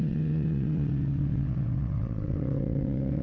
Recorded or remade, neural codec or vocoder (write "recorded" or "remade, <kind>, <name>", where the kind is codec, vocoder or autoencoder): remade, vocoder, WaveNeXt